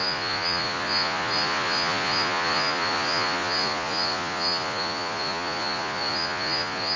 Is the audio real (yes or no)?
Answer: no